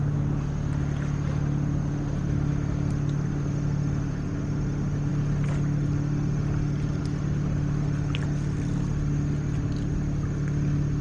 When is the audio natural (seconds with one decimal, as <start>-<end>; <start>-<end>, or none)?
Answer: 0.0-11.0